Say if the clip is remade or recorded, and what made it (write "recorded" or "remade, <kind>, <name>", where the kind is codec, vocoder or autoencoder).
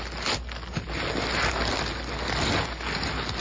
recorded